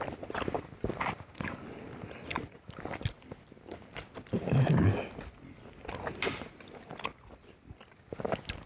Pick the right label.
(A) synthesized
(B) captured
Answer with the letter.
B